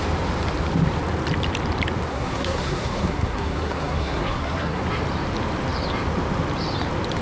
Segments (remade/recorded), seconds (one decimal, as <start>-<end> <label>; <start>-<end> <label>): 0.0-2.1 recorded; 2.1-4.8 remade; 4.8-7.2 recorded